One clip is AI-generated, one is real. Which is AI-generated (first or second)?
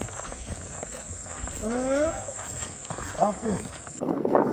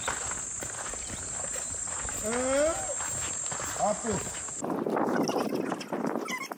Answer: first